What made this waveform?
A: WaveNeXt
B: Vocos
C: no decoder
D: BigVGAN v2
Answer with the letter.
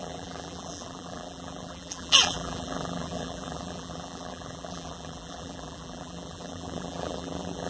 D